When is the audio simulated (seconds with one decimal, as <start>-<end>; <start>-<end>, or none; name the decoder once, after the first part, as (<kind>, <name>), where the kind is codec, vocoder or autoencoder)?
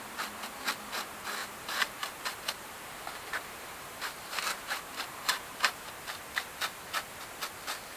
1.4-5.9 (vocoder, BigVGAN v2)